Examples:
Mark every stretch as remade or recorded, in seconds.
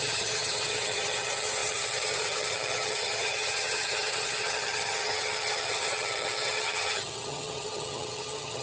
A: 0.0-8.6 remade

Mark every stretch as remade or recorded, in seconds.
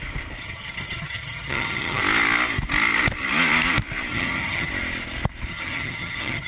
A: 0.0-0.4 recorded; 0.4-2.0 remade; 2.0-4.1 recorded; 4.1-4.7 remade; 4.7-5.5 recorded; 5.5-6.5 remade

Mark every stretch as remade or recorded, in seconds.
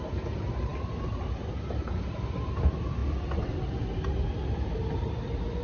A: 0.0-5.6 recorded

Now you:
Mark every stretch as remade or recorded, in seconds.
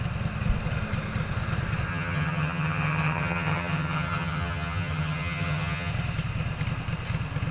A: 0.0-1.9 recorded; 1.9-5.9 remade; 5.9-7.5 recorded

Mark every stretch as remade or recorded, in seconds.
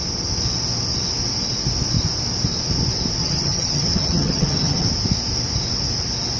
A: 0.0-3.2 recorded; 3.2-4.9 remade; 4.9-6.4 recorded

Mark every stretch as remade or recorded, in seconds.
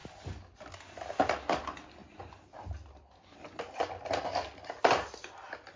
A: 0.0-5.8 recorded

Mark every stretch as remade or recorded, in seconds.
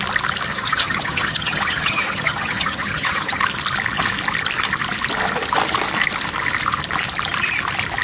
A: 0.0-0.5 recorded; 0.5-3.4 remade; 3.4-8.0 recorded